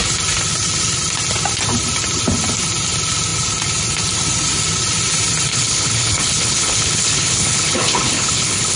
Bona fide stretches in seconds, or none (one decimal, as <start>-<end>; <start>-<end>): 0.0-5.5